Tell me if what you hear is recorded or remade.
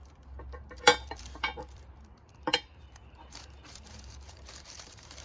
remade